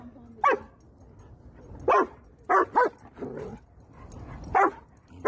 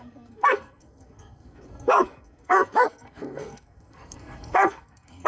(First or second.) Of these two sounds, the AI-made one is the second